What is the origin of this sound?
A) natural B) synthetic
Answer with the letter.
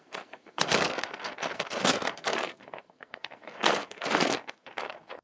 B